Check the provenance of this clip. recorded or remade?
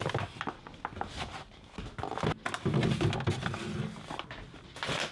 recorded